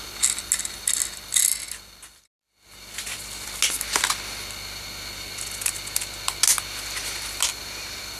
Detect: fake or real real